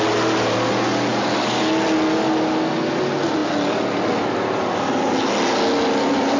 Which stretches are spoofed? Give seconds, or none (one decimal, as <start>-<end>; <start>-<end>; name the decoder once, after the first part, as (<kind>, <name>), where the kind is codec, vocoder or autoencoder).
none